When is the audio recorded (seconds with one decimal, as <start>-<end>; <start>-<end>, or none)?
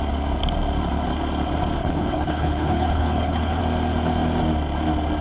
0.0-1.8; 3.6-5.2